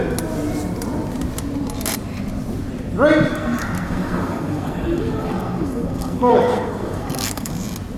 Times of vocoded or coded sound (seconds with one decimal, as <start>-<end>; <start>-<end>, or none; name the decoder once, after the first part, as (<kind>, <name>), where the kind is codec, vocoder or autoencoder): 3.3-7.5 (codec, SNAC)